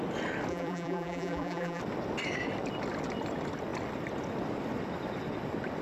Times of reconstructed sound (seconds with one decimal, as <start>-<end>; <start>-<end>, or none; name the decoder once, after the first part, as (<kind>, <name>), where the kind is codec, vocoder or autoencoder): 0.5-1.8 (vocoder, BigVGAN v2)